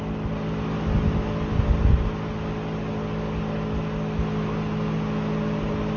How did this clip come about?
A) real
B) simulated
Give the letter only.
A